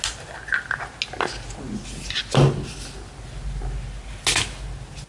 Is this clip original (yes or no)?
yes